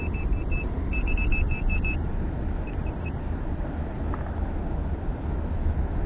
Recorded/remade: recorded